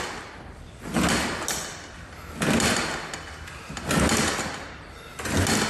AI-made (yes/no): no